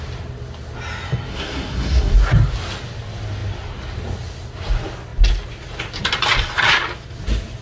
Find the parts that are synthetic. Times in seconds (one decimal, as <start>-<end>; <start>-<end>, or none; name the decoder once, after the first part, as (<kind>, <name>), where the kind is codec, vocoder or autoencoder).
1.3-2.1 (codec, SNAC)